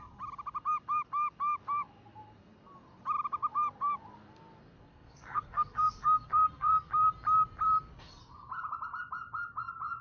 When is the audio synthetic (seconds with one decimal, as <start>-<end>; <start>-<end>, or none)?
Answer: 4.9-6.9

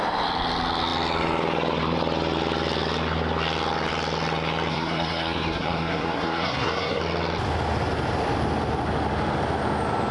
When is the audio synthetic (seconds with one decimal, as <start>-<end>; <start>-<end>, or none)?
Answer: 4.7-7.0